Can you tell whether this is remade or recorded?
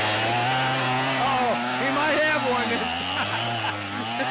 recorded